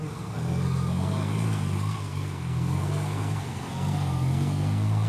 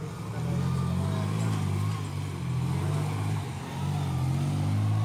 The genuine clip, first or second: second